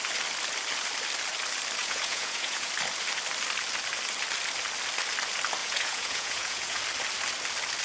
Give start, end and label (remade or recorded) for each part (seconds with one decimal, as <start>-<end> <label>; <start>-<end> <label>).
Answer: 0.0-1.8 recorded; 1.8-2.7 remade; 2.7-5.6 recorded; 5.6-6.8 remade; 6.8-7.8 recorded